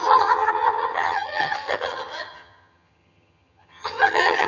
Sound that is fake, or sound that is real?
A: fake